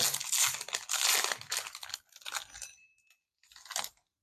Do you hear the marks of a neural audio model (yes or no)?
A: no